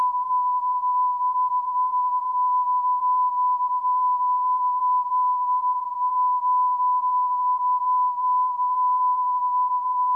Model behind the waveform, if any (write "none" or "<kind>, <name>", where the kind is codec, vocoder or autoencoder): vocoder, BigVGAN v2